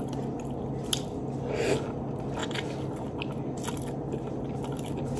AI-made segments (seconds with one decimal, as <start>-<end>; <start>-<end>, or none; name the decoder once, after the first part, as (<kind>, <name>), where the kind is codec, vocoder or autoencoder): none